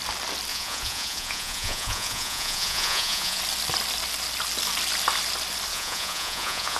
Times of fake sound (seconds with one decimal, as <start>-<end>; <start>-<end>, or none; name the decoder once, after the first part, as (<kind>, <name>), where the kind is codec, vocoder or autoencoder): 0.5-3.4 (vocoder, Vocos); 5.7-6.8